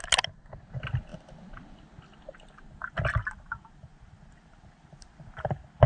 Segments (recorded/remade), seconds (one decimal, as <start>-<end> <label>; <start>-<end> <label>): 0.0-5.9 recorded